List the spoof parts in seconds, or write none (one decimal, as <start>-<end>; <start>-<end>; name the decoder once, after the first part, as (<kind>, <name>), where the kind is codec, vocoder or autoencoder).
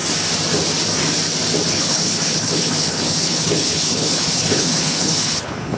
1.7-5.8 (codec, HILCodec)